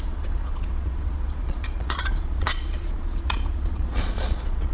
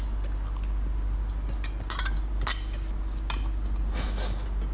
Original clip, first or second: second